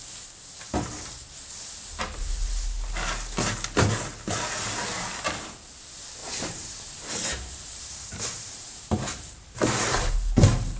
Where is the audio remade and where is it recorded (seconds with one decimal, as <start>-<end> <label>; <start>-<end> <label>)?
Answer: 0.0-6.2 recorded; 6.2-10.1 remade; 10.1-10.8 recorded